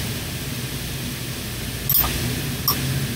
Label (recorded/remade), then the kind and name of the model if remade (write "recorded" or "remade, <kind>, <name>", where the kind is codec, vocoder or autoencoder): recorded